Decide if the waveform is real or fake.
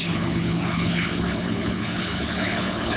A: fake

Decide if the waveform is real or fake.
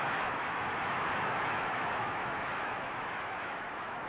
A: fake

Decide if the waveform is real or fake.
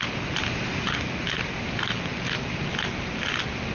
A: real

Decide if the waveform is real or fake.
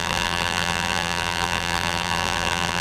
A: fake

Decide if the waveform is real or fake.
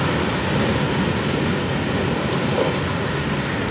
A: real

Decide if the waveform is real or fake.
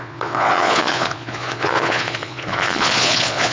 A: fake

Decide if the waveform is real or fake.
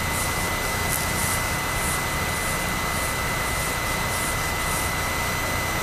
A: real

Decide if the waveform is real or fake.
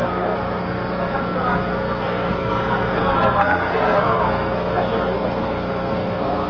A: fake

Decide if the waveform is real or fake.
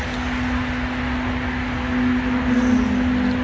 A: real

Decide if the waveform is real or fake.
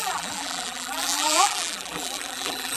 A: fake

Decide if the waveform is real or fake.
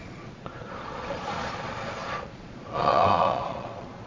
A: fake